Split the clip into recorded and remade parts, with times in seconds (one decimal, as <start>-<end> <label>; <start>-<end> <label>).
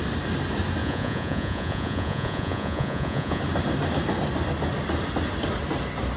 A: 0.0-0.8 recorded; 0.8-3.4 remade; 3.4-6.2 recorded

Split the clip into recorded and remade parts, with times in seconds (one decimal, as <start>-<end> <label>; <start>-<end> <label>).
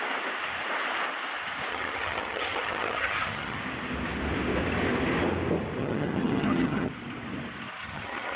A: 0.0-1.7 recorded; 1.7-3.6 remade; 3.6-5.8 recorded; 5.8-6.9 remade; 6.9-7.8 recorded; 7.8-8.4 remade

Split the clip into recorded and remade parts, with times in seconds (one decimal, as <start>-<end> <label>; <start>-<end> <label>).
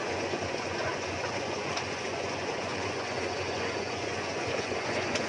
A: 0.0-5.3 remade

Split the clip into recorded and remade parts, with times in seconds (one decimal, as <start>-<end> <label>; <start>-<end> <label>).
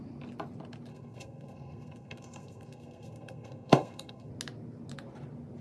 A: 0.0-0.9 recorded; 0.9-4.3 remade; 4.3-5.6 recorded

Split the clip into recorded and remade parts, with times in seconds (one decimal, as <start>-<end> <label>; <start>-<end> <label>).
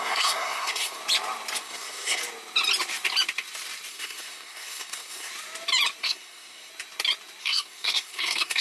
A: 0.0-1.0 remade; 1.0-1.6 recorded; 1.6-2.2 remade; 2.2-3.9 recorded; 3.9-5.3 remade; 5.3-6.0 recorded; 6.0-6.7 remade; 6.7-7.4 recorded; 7.4-8.6 remade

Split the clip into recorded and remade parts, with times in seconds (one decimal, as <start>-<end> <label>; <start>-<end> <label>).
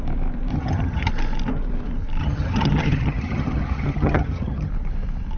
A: 0.0-0.5 recorded; 0.5-1.1 remade; 1.1-2.2 recorded; 2.2-4.7 remade; 4.7-5.4 recorded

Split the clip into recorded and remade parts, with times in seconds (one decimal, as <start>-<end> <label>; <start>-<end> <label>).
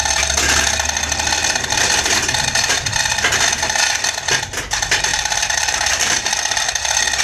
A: 0.0-5.1 recorded; 5.1-6.7 remade; 6.7-7.2 recorded